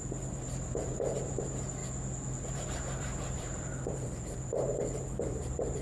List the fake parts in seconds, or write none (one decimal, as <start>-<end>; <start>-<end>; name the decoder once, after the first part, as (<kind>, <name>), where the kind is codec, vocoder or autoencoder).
0.0-1.8 (vocoder, BigVGAN v2); 2.5-5.8